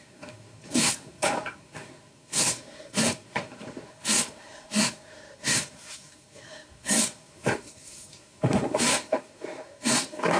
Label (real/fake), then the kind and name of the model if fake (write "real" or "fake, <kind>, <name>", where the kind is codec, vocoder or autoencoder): fake, codec, SNAC